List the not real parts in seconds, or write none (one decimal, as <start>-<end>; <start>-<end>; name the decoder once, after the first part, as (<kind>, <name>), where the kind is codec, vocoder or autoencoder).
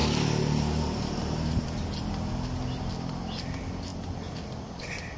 none